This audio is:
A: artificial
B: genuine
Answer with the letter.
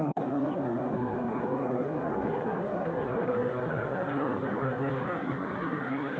A